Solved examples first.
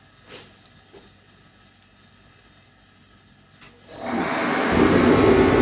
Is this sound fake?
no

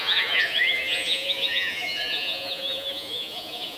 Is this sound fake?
yes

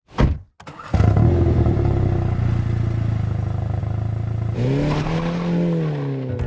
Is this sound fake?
no